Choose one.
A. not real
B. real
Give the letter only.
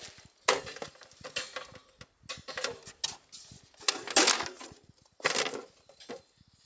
B